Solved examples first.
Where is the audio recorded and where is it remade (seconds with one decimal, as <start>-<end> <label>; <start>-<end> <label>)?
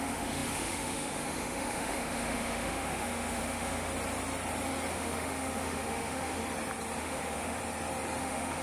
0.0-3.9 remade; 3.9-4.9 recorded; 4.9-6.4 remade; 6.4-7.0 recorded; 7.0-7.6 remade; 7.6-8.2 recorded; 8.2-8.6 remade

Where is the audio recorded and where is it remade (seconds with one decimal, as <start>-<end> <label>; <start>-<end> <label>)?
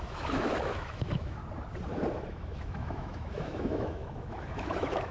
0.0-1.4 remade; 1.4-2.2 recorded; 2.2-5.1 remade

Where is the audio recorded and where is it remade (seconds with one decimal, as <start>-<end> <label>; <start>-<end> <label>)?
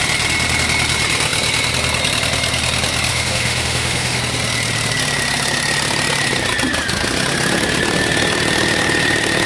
0.0-3.1 recorded; 3.1-4.2 remade; 4.2-9.5 recorded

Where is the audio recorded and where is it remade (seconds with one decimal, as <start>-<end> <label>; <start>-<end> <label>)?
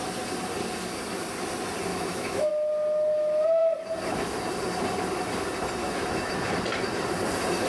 0.0-1.9 recorded; 1.9-2.5 remade; 2.5-5.8 recorded; 5.8-6.3 remade; 6.3-7.7 recorded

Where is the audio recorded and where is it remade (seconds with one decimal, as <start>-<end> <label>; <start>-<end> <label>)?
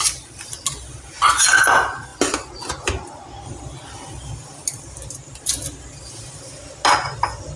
0.0-7.6 recorded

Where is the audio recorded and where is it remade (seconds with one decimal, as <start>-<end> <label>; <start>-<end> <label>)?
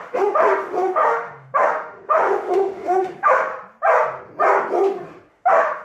0.0-3.5 remade; 3.5-5.3 recorded; 5.3-5.8 remade